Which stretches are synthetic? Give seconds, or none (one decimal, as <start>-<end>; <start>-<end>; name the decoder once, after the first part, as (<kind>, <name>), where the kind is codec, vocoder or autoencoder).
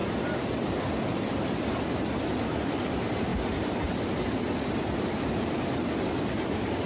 0.0-6.9 (vocoder, BigVGAN v2)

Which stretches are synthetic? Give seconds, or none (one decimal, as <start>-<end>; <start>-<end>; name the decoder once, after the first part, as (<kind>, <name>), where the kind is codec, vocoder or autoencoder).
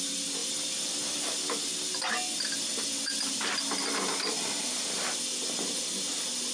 none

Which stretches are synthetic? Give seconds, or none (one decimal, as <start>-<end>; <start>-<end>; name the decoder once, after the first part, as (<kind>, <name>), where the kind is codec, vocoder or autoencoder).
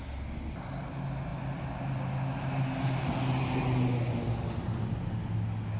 none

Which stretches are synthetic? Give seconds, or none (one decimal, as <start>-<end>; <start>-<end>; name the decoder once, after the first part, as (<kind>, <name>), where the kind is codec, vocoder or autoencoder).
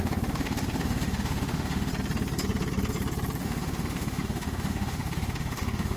0.0-1.9 (autoencoder, DAC-VAE); 3.4-6.0